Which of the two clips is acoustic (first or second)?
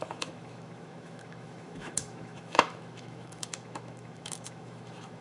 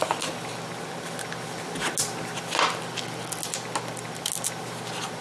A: second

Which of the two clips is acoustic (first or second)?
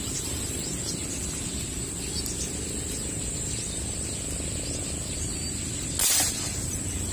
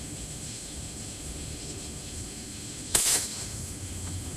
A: first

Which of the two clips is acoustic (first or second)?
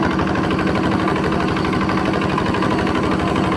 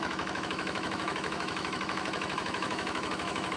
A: first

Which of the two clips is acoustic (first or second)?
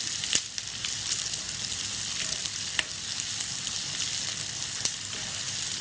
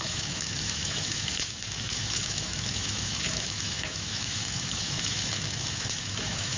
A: first